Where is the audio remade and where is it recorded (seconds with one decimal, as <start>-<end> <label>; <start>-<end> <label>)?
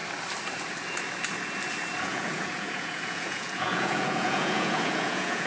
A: 0.0-2.0 recorded; 2.0-5.5 remade